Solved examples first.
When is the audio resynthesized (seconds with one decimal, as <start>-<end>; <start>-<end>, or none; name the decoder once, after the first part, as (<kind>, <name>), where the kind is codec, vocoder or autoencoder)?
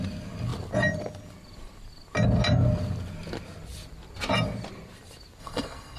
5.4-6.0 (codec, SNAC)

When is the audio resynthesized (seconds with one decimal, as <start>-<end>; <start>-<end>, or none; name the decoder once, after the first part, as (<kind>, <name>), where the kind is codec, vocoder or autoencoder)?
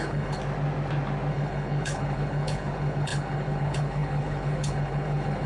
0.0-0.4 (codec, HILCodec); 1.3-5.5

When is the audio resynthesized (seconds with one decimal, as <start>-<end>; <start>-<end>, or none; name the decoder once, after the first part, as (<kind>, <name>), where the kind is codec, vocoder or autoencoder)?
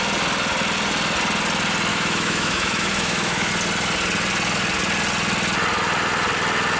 1.9-3.5 (autoencoder, DAC-VAE)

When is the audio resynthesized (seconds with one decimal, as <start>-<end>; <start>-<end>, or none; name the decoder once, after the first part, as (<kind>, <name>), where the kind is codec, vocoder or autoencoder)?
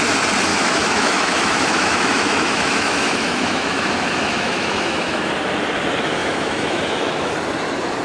0.5-5.3 (autoencoder, DAC-VAE); 6.2-7.3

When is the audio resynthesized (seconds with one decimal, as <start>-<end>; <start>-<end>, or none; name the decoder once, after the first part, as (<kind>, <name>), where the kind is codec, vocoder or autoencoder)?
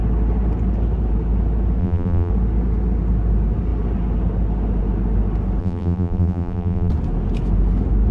1.8-2.3 (vocoder, BigVGAN v2); 5.6-6.9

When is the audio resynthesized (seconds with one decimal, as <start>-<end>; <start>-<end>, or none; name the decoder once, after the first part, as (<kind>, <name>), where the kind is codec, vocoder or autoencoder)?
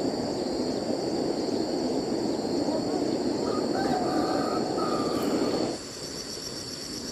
3.9-7.1 (vocoder, BigVGAN v2)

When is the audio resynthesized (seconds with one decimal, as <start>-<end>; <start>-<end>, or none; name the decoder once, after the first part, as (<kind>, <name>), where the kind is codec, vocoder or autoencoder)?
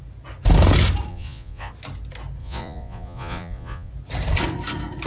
1.1-1.7 (vocoder, Vocos); 2.4-3.9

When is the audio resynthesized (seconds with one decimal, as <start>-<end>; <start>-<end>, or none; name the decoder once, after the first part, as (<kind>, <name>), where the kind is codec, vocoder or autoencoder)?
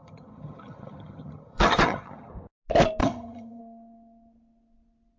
0.0-2.3 (vocoder, HiFi-GAN); 3.0-3.6